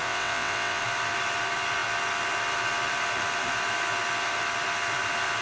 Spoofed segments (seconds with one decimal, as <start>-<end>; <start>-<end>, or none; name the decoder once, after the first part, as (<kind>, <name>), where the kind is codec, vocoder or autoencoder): 0.0-0.8 (vocoder, WaveNeXt)